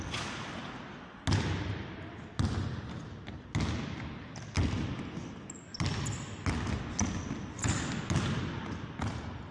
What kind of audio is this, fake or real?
real